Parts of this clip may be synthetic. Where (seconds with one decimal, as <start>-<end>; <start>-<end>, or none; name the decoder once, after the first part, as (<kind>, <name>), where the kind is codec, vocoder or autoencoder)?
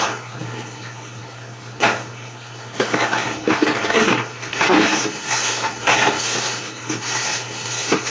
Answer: 0.0-8.1 (codec, SNAC)